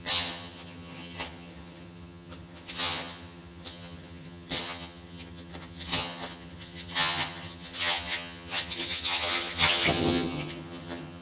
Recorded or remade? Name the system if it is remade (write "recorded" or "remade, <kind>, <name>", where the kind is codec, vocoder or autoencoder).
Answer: remade, vocoder, HiFi-GAN